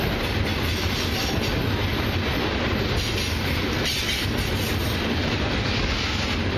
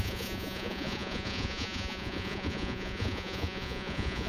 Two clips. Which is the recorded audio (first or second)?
first